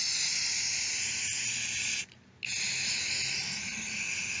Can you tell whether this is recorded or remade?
recorded